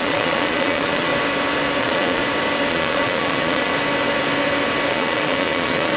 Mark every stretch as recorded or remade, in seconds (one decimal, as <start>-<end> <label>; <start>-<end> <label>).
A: 0.0-1.1 remade; 1.1-1.8 recorded; 1.8-2.2 remade; 2.2-2.7 recorded; 2.7-3.7 remade; 3.7-4.9 recorded; 4.9-6.0 remade